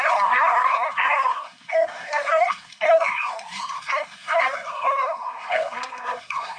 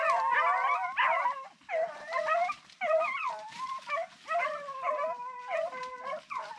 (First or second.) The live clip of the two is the second